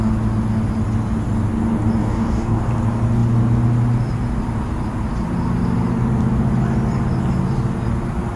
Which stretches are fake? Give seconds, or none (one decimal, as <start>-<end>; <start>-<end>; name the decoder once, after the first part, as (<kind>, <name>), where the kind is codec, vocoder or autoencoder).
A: 2.0-2.7 (codec, DAC)